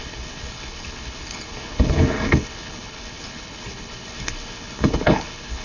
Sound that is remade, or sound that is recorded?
remade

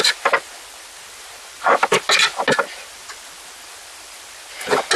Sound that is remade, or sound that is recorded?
recorded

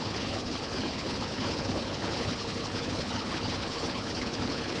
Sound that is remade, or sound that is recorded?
remade